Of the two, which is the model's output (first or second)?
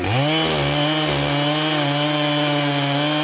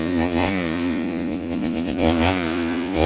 second